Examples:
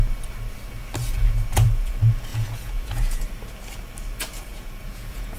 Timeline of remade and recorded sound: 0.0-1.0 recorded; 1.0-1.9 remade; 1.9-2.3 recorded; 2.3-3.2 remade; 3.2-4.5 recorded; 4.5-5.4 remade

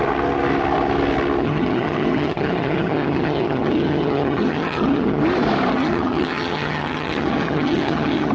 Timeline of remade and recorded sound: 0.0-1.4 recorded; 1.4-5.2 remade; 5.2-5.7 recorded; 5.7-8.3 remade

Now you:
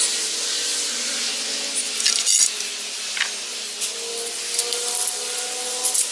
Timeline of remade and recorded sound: 0.0-6.1 recorded

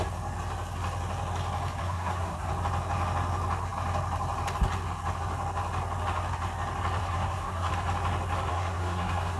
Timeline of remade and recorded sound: 0.0-1.8 recorded; 1.8-2.5 remade; 2.5-7.0 recorded; 7.0-7.7 remade; 7.7-8.5 recorded; 8.5-9.4 remade

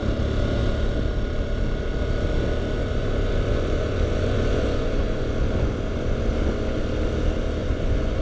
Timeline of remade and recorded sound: 0.0-2.8 recorded; 2.8-6.8 remade; 6.8-7.6 recorded; 7.6-8.2 remade